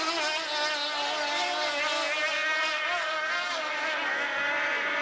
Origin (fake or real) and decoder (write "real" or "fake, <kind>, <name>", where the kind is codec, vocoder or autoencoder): real